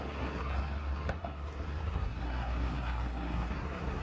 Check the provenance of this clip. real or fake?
fake